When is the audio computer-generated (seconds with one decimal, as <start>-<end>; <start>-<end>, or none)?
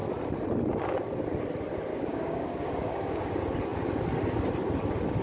1.9-3.3